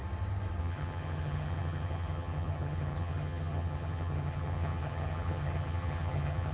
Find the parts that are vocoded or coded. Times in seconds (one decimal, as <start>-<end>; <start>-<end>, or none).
0.6-6.5